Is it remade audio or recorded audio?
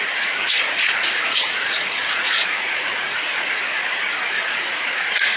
remade